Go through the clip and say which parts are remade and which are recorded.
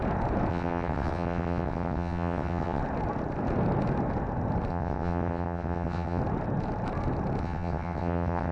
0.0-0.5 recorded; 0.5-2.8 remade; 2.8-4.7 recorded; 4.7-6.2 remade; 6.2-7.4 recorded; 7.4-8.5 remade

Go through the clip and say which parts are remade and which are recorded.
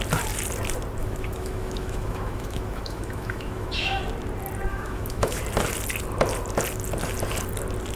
0.0-1.0 recorded; 1.0-4.0 remade; 4.0-4.7 recorded; 4.7-5.4 remade; 5.4-8.0 recorded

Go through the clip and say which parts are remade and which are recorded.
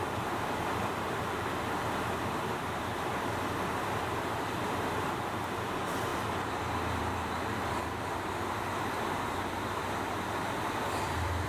0.0-11.5 remade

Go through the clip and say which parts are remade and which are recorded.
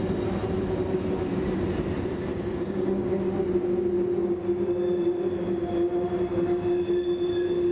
0.0-2.3 recorded; 2.3-3.2 remade; 3.2-7.7 recorded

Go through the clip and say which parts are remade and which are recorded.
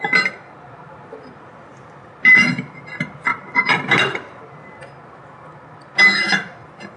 0.0-1.7 recorded; 1.7-2.4 remade; 2.4-3.3 recorded; 3.3-4.4 remade; 4.4-7.0 recorded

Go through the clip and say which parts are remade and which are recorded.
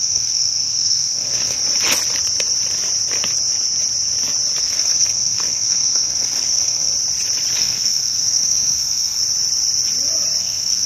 0.0-1.6 remade; 1.6-4.6 recorded; 4.6-6.9 remade; 6.9-7.6 recorded; 7.6-9.2 remade; 9.2-10.4 recorded; 10.4-10.9 remade